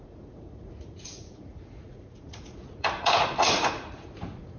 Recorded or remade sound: remade